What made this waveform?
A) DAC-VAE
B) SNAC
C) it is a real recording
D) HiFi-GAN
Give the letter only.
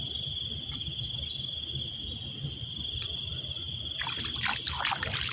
C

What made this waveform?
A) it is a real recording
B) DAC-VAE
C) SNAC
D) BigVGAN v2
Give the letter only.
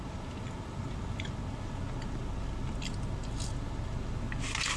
A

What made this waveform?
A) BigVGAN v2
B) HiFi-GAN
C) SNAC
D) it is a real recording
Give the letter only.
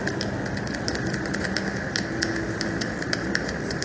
D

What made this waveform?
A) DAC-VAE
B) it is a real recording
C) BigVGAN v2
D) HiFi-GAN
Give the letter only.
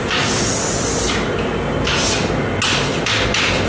B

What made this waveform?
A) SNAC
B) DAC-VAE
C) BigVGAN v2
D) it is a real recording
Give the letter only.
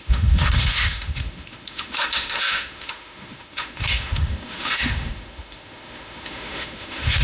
B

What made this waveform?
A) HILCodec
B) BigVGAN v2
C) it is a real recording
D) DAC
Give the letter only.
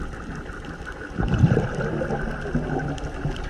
C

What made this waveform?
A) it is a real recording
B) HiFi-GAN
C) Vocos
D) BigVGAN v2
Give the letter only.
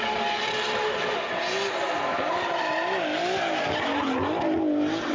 A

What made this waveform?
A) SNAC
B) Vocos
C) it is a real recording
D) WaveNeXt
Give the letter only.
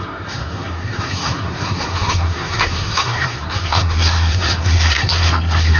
A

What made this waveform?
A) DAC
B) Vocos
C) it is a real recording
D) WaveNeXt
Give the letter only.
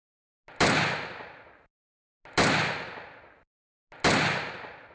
C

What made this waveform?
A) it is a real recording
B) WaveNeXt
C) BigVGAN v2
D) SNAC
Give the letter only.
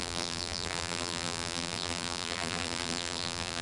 C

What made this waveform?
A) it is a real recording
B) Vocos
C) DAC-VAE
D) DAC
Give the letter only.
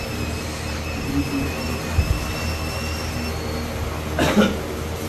A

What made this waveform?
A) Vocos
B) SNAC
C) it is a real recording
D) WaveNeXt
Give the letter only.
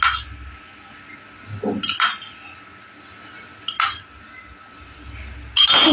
C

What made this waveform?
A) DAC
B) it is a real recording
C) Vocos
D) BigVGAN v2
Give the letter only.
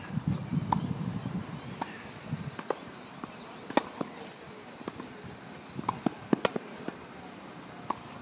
B